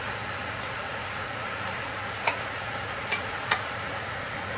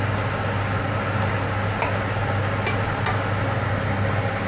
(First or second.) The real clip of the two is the second